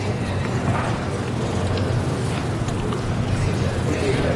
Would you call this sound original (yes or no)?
yes